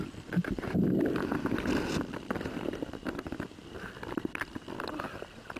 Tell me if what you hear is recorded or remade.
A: recorded